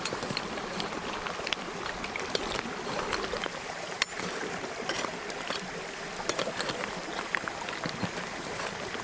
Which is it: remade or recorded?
remade